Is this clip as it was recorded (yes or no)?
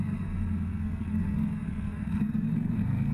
no